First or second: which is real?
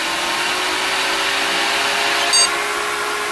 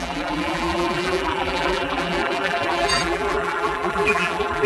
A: first